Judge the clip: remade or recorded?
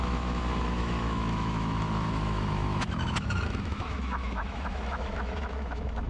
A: remade